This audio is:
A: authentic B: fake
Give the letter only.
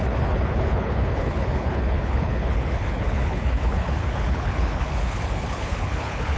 B